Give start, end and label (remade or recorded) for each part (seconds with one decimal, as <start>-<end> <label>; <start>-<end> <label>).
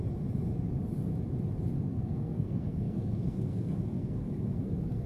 0.0-1.9 recorded; 1.9-5.1 remade